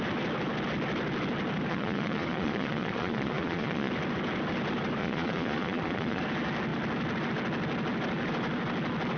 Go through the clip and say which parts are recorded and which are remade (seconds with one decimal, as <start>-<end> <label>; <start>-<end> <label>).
0.0-1.7 recorded; 1.7-3.9 remade; 3.9-5.0 recorded; 5.0-6.2 remade; 6.2-9.2 recorded